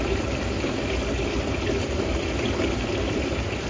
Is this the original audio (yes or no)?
no